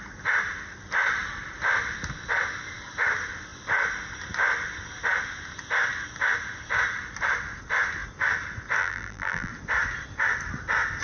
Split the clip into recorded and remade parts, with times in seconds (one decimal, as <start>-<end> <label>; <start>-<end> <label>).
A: 0.0-8.8 recorded; 8.8-9.5 remade; 9.5-11.0 recorded

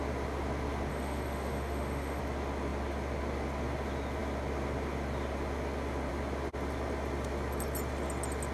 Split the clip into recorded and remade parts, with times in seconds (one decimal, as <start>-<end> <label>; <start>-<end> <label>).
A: 0.0-0.9 recorded; 0.9-2.2 remade; 2.2-8.5 recorded

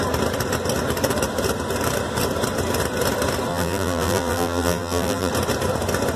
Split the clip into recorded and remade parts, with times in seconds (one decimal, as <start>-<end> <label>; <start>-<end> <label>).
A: 0.0-3.5 recorded; 3.5-5.3 remade; 5.3-6.2 recorded

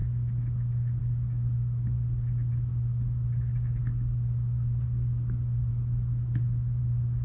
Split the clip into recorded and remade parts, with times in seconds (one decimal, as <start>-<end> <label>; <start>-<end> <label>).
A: 0.0-7.2 recorded

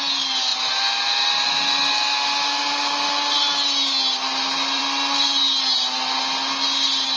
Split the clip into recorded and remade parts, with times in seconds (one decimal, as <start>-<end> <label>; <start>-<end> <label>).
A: 0.0-7.2 recorded

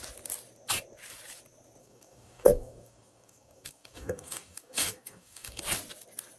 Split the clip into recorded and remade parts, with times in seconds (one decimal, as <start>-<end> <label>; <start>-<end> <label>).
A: 0.0-1.8 recorded; 1.8-5.6 remade; 5.6-6.4 recorded

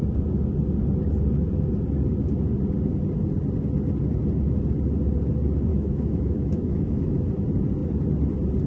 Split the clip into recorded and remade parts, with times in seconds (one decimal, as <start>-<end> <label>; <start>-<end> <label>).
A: 0.0-5.7 recorded; 5.7-7.3 remade; 7.3-8.7 recorded

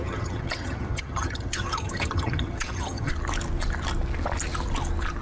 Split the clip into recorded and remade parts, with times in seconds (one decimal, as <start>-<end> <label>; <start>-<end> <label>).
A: 0.0-3.1 remade; 3.1-5.2 recorded